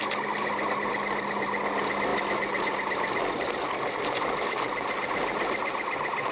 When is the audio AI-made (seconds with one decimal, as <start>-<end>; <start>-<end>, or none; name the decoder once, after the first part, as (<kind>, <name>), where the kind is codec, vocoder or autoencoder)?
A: none